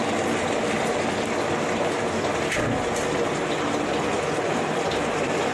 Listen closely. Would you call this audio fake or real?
real